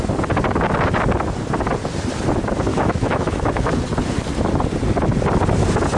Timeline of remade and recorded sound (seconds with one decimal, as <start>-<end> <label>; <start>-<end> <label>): 0.0-2.7 recorded; 2.7-3.7 remade; 3.7-6.0 recorded